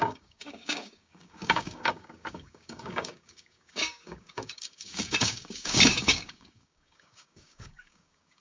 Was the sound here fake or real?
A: fake